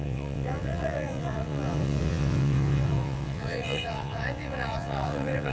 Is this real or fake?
fake